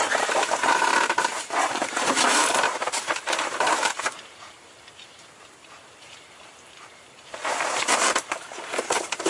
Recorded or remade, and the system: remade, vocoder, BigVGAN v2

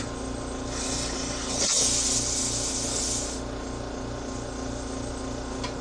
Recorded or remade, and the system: recorded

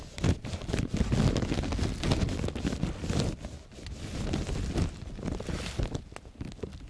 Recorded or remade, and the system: recorded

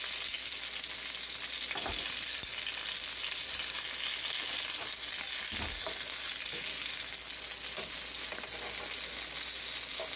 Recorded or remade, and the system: recorded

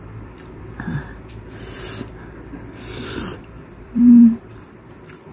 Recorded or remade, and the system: remade, vocoder, BigVGAN v2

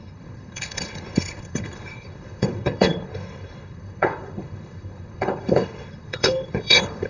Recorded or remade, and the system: remade, codec, HILCodec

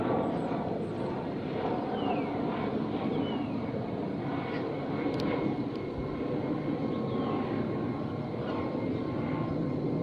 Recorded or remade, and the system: recorded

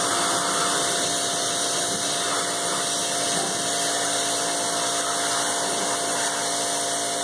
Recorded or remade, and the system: recorded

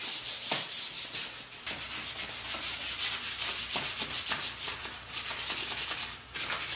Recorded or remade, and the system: recorded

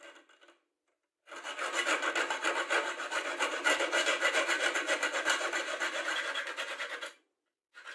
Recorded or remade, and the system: recorded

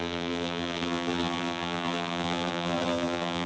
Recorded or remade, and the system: remade, vocoder, BigVGAN v2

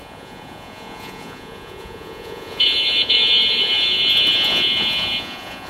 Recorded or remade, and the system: remade, vocoder, Vocos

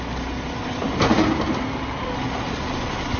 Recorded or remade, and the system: recorded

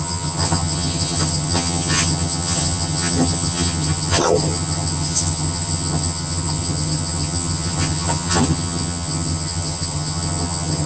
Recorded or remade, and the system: remade, vocoder, HiFi-GAN